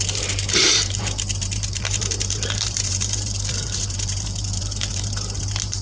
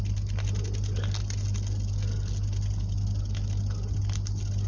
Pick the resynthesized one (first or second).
first